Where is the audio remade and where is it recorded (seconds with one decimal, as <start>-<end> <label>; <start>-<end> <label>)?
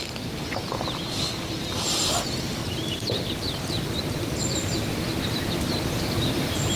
0.0-6.8 remade